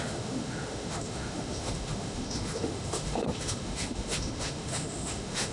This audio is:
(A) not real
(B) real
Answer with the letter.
A